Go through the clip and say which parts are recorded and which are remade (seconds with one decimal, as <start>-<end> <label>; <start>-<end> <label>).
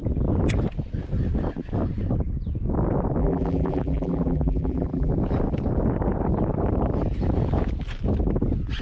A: 0.0-3.2 recorded; 3.2-5.1 remade; 5.1-8.8 recorded